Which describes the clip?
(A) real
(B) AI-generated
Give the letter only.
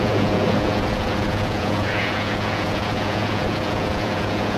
B